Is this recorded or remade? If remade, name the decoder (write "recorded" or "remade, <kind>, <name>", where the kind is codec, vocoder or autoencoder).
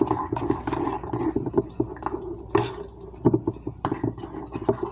recorded